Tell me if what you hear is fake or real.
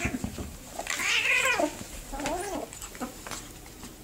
real